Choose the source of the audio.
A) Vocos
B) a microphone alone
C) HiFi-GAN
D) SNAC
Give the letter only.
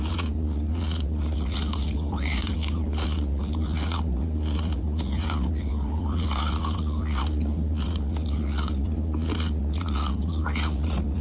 A